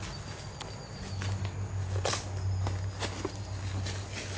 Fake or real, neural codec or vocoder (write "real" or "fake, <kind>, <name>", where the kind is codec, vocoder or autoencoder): real